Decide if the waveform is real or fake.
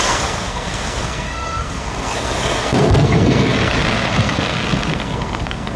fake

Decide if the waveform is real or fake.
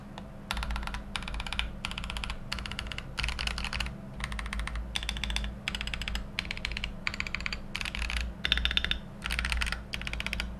real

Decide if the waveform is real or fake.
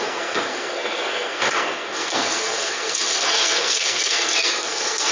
fake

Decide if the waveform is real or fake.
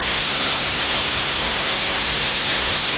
fake